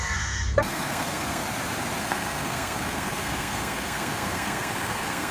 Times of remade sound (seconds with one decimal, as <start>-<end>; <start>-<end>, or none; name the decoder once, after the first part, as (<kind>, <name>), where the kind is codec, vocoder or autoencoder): 0.0-1.4 (codec, SNAC); 2.0-5.3